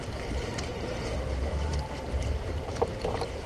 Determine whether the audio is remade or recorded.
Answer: remade